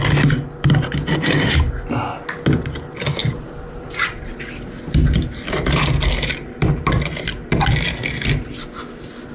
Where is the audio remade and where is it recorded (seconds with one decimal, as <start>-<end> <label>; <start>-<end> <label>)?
0.0-3.2 recorded; 3.2-4.1 remade; 4.1-9.3 recorded